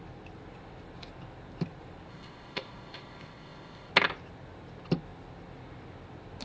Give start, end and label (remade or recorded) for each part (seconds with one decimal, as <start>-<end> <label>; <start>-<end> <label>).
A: 0.0-2.1 recorded; 2.1-3.9 remade; 3.9-6.4 recorded